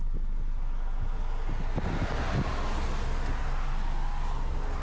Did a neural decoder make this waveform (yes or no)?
no